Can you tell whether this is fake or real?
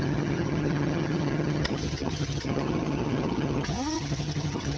fake